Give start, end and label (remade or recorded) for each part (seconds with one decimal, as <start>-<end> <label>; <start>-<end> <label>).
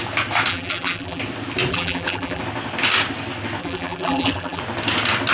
0.0-0.5 recorded; 0.5-1.2 remade; 1.2-1.7 recorded; 1.7-2.4 remade; 2.4-3.6 recorded; 3.6-4.6 remade; 4.6-5.3 recorded